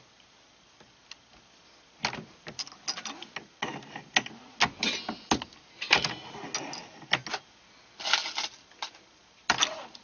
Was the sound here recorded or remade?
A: recorded